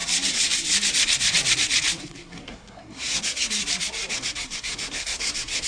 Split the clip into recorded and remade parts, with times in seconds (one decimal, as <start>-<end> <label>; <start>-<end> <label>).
0.0-2.0 recorded; 2.0-3.6 remade; 3.6-4.1 recorded; 4.1-5.7 remade